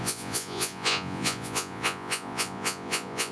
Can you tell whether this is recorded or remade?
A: remade